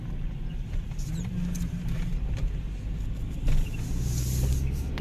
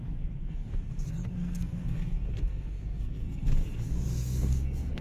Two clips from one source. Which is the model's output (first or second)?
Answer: second